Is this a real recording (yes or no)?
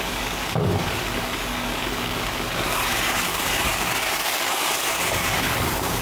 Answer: no